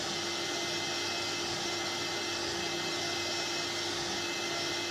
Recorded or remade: recorded